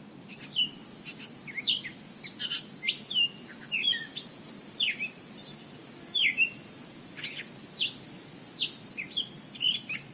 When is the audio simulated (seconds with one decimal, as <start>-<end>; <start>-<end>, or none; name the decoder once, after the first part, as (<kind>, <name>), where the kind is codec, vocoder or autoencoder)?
none